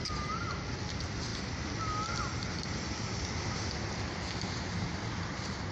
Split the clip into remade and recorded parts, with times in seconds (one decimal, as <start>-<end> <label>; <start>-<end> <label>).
0.0-5.7 recorded